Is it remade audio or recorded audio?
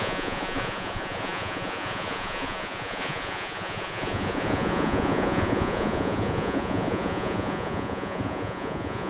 remade